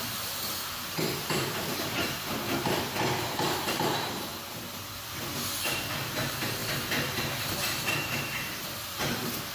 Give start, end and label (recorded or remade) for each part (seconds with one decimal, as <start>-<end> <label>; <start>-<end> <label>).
0.0-4.3 remade; 4.3-5.6 recorded; 5.6-9.5 remade

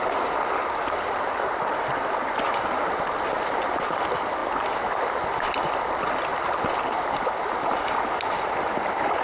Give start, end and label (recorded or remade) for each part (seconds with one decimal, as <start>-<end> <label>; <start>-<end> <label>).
0.0-9.2 recorded

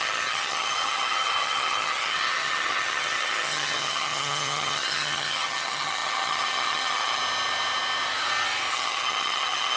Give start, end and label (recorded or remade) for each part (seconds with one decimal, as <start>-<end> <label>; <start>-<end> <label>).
0.0-7.2 remade; 7.2-8.7 recorded; 8.7-9.8 remade